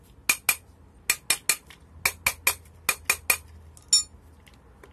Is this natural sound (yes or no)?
yes